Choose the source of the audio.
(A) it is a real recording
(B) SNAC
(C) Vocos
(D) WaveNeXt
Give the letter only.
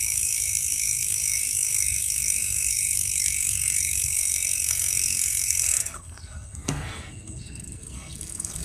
B